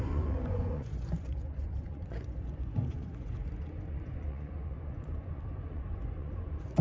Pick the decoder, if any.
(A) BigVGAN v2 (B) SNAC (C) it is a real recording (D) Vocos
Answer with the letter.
D